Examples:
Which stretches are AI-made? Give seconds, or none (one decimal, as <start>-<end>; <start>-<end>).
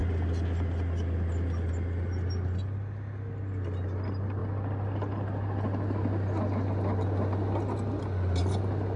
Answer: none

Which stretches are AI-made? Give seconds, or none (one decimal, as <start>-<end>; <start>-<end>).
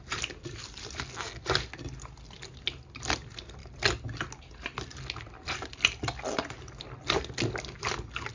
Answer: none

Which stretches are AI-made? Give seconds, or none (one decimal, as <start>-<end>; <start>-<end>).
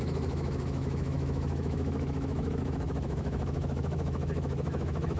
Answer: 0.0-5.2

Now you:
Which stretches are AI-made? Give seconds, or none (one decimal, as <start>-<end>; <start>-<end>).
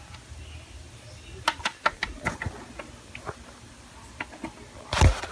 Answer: none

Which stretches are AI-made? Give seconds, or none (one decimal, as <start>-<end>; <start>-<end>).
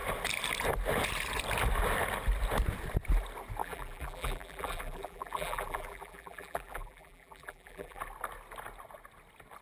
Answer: 3.6-8.0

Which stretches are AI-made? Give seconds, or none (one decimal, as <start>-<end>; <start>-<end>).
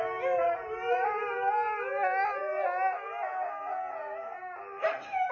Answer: none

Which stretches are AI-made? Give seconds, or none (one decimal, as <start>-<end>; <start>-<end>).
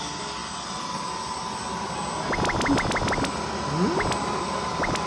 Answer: none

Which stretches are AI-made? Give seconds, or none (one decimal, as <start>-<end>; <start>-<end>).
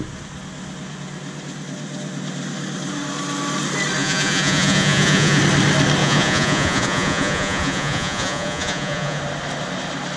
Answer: 4.0-5.4; 6.0-9.2